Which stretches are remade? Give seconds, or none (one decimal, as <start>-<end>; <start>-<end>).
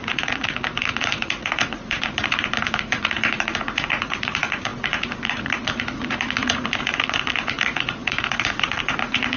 0.0-9.4